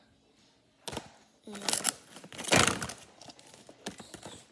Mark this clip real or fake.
real